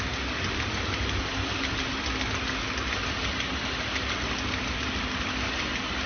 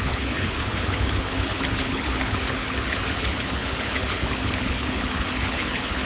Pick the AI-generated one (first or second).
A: second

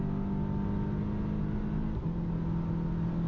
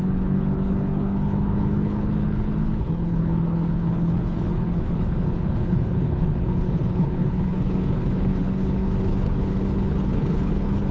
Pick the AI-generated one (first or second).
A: second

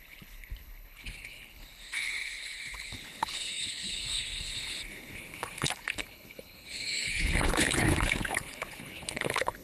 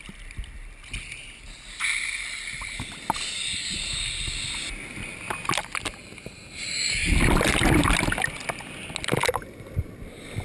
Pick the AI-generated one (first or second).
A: first